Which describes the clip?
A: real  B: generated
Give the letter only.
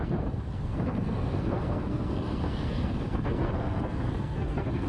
B